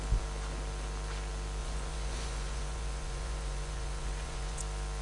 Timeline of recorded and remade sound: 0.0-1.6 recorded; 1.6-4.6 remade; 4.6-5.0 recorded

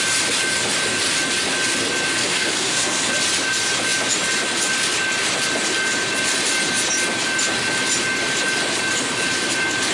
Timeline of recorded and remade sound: 0.0-2.2 recorded; 2.2-3.1 remade; 3.1-9.9 recorded

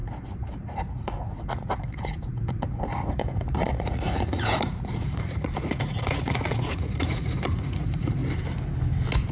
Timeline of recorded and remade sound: 0.0-8.2 remade; 8.2-9.3 recorded